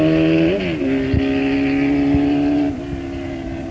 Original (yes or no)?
yes